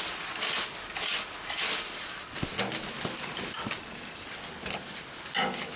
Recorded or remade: recorded